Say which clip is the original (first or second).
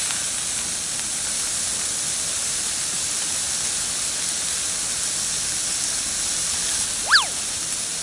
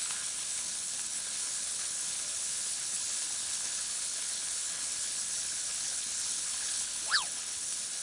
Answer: first